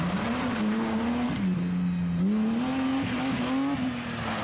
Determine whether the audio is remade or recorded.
recorded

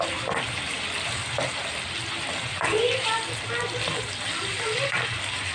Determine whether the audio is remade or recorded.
recorded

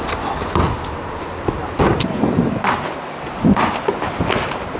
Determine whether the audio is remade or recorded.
recorded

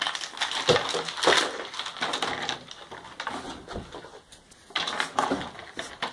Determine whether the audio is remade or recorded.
recorded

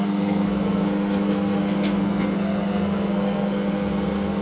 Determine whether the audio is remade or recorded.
remade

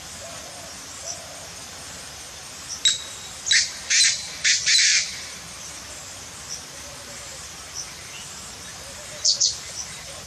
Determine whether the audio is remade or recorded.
recorded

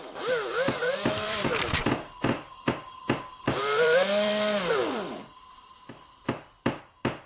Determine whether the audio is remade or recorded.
remade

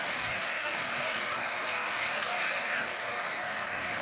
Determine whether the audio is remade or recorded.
remade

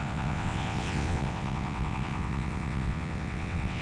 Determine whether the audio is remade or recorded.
remade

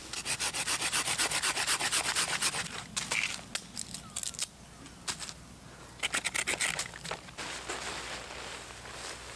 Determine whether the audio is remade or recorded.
recorded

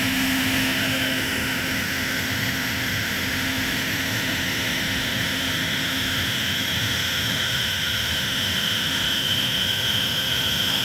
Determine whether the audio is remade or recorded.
remade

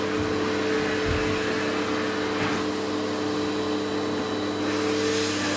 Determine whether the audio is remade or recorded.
recorded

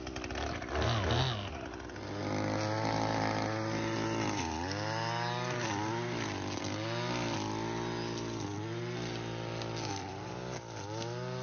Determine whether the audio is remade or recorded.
recorded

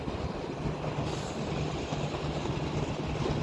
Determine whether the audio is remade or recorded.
recorded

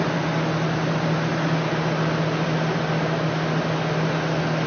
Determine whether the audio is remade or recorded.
recorded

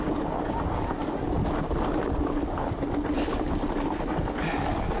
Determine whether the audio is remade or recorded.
recorded